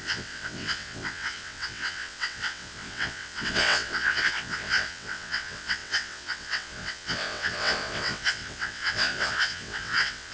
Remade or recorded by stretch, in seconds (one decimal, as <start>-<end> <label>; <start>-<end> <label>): 0.0-10.3 remade